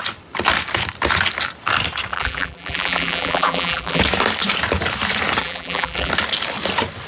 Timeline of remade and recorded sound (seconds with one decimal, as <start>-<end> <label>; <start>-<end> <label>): 0.0-2.1 recorded; 2.1-4.0 remade; 4.0-5.4 recorded; 5.4-6.1 remade; 6.1-7.1 recorded